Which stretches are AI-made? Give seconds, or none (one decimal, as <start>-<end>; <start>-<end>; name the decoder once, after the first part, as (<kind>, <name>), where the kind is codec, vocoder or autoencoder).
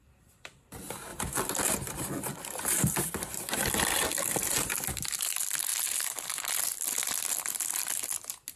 1.1-1.6 (vocoder, BigVGAN v2); 2.3-4.7; 5.7-6.5